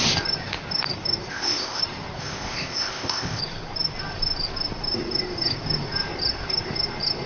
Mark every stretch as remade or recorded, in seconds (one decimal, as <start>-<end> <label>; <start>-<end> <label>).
0.0-1.3 recorded; 1.3-1.8 remade; 1.8-2.2 recorded; 2.2-3.4 remade; 3.4-7.3 recorded